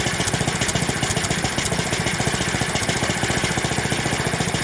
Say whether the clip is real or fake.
real